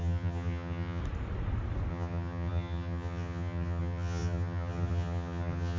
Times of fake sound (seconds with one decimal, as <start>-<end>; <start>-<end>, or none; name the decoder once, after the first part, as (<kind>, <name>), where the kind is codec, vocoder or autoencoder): 0.0-1.0 (vocoder, HiFi-GAN); 1.9-5.8